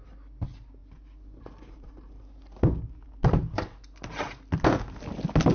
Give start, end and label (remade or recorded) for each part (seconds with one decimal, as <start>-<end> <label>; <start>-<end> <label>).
0.0-5.5 recorded